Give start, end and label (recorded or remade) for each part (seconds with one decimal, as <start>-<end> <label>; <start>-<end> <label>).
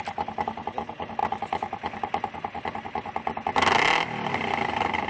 0.0-5.1 recorded